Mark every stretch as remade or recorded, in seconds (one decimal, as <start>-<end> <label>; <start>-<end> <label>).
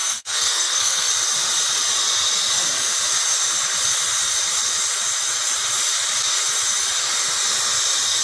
0.0-1.1 remade; 1.1-8.2 recorded